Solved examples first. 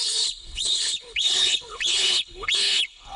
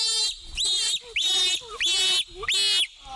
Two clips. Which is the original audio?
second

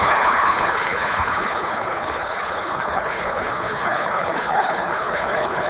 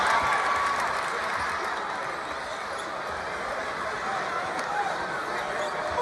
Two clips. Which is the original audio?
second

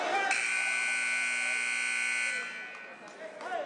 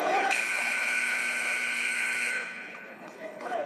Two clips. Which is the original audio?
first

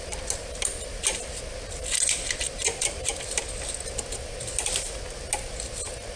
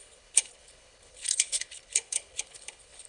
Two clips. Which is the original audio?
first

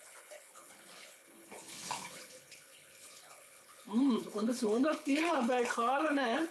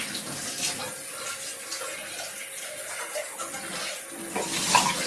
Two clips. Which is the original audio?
second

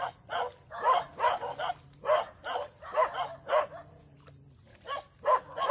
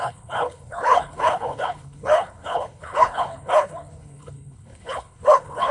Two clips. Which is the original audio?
first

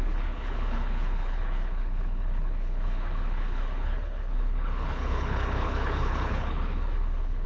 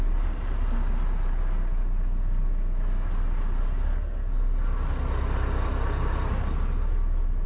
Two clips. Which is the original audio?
second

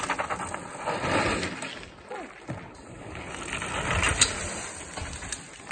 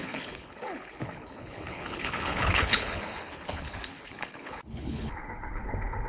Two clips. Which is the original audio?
first